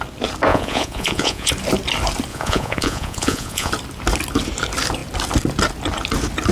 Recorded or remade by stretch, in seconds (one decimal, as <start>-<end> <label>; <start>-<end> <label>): 0.0-0.5 recorded; 0.5-1.5 remade; 1.5-2.3 recorded; 2.3-3.7 remade; 3.7-6.5 recorded